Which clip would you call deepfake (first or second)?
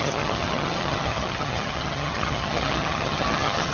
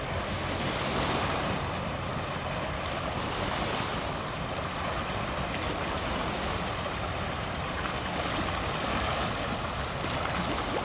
first